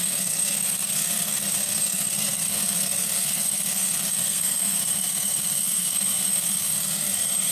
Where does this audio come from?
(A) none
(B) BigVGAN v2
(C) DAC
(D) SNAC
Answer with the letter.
D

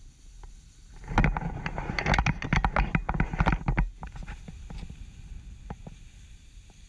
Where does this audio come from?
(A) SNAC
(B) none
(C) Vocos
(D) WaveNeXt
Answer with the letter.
B